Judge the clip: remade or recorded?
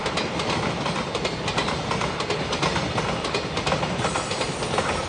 recorded